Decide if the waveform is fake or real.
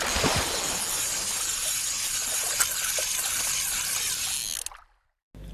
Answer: real